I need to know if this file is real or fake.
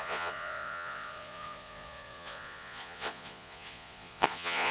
fake